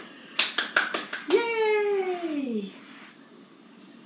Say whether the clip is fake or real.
real